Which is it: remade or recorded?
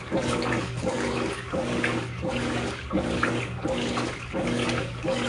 remade